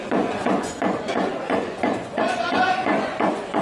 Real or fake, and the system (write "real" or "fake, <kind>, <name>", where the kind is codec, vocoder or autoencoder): fake, vocoder, Vocos